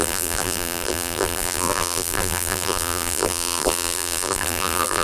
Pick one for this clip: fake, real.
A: fake